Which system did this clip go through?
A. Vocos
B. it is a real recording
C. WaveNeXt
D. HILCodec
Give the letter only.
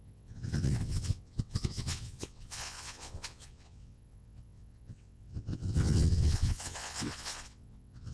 C